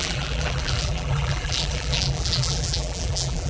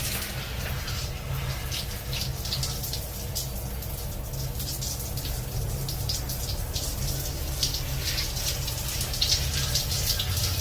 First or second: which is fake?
first